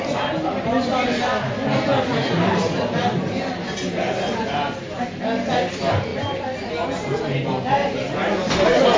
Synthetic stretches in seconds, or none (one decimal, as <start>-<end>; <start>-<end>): none